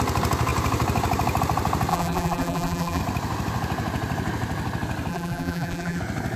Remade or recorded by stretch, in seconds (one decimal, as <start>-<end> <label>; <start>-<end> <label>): 0.0-1.9 recorded; 1.9-3.0 remade; 3.0-5.1 recorded; 5.1-6.0 remade; 6.0-6.4 recorded